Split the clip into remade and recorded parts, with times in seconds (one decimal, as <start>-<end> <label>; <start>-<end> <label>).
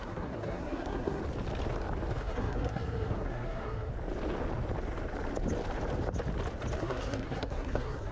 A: 0.0-1.2 remade; 1.2-2.2 recorded; 2.2-3.9 remade; 3.9-6.8 recorded; 6.8-8.1 remade